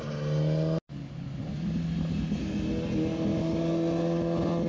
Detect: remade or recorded recorded